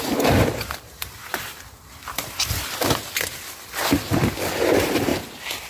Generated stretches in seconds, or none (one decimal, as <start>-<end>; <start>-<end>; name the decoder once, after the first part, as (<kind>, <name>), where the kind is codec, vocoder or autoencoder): 0.9-2.6 (vocoder, BigVGAN v2)